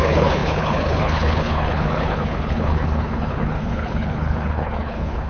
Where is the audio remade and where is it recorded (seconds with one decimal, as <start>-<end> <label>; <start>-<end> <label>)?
0.0-5.3 remade